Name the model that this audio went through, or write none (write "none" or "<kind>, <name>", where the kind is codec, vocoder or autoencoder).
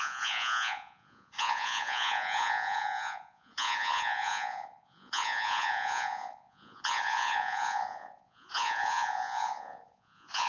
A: vocoder, Vocos